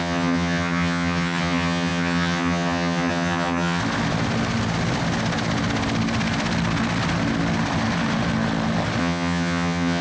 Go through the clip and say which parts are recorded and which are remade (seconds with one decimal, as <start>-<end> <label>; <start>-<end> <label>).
0.0-3.8 remade; 3.8-9.0 recorded; 9.0-10.0 remade